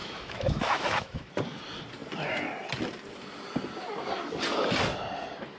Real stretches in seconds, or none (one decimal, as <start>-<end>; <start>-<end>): 1.3-5.6